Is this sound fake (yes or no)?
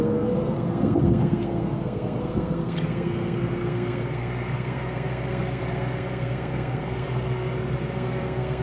yes